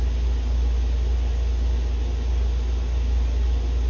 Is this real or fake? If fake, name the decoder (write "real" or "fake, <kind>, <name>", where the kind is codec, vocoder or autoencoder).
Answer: real